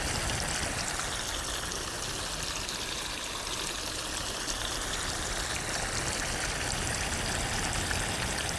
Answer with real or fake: real